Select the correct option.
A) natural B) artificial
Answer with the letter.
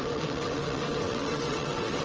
B